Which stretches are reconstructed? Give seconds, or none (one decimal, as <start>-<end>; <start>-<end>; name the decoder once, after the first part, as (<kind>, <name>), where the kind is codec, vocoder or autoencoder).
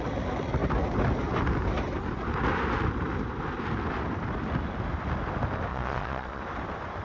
5.7-6.4 (vocoder, Vocos)